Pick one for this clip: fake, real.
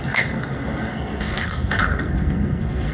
fake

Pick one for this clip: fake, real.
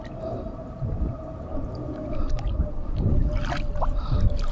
fake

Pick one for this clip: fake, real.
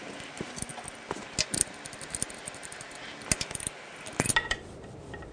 real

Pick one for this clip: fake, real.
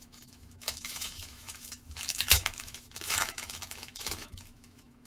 fake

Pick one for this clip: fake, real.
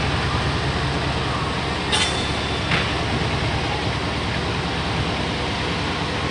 real